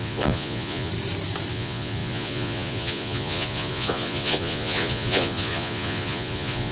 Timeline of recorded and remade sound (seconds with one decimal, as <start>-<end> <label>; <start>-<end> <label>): 0.0-0.9 remade; 0.9-1.5 recorded; 1.5-6.7 remade